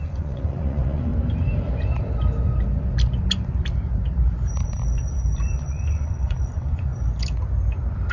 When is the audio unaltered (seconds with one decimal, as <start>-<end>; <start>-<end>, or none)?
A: 1.1-5.6; 6.9-8.1